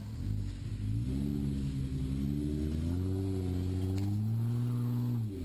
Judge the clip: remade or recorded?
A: recorded